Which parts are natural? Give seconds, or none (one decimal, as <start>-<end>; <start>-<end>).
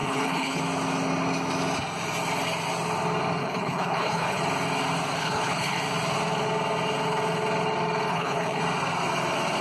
0.6-3.4; 4.4-5.2; 5.8-8.1; 8.6-9.6